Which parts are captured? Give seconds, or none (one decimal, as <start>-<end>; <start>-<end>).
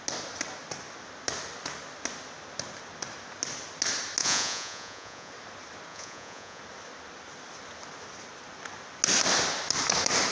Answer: 0.0-4.2; 5.3-5.9; 6.6-10.3